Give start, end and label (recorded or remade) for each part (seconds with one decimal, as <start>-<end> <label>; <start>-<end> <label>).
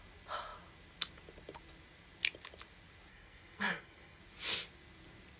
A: 0.0-3.1 recorded; 3.1-4.2 remade; 4.2-5.4 recorded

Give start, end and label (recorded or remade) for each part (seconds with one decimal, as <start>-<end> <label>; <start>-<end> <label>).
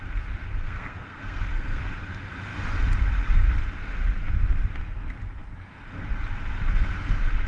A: 0.0-0.6 recorded; 0.6-1.8 remade; 1.8-7.5 recorded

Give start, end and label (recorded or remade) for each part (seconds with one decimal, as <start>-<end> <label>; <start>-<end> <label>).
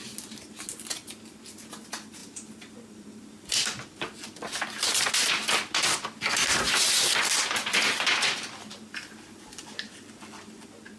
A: 0.0-2.2 recorded; 2.2-6.9 remade; 6.9-11.0 recorded